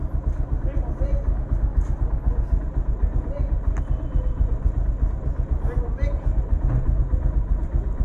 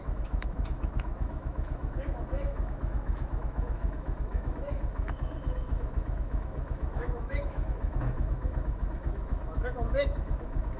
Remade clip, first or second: second